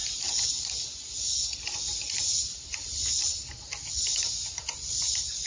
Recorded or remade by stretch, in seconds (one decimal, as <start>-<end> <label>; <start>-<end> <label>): 0.0-5.5 recorded